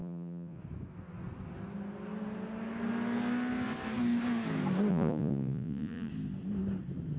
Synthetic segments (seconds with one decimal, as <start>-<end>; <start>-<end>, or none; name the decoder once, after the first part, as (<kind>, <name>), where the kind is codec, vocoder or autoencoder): 0.0-0.6 (vocoder, Vocos); 4.9-6.1